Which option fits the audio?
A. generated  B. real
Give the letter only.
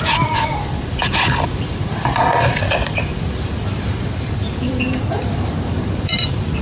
A